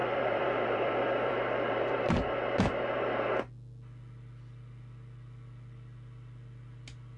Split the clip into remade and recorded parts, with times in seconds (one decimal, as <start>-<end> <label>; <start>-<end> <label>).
0.0-2.3 remade; 2.3-7.2 recorded